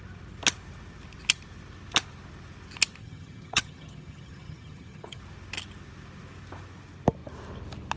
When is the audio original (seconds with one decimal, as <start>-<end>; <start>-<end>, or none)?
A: 0.0-3.0; 5.2-8.0